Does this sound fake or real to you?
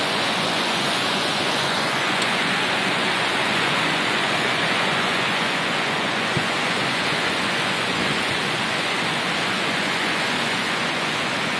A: fake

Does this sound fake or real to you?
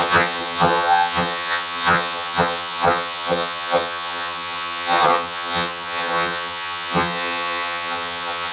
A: fake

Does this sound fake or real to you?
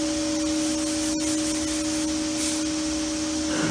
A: real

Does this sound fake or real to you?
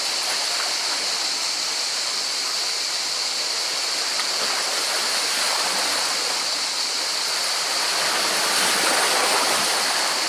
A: real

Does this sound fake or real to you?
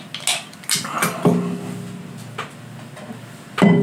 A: real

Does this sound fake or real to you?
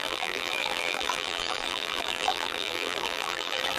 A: fake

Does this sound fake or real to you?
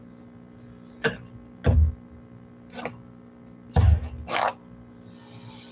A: real